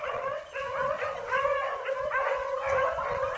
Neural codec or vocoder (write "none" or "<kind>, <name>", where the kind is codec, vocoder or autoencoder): vocoder, WaveNeXt